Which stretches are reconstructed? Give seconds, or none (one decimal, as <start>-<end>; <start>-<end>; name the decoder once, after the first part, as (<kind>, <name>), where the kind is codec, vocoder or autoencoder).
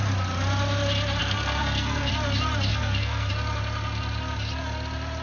1.2-2.1 (codec, SNAC); 2.7-3.3